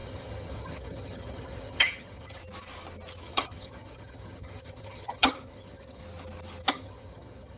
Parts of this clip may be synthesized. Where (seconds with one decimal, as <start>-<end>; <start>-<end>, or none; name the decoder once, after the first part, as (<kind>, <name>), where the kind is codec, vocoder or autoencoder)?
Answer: 0.0-2.4 (vocoder, HiFi-GAN); 3.2-6.0; 6.7-7.6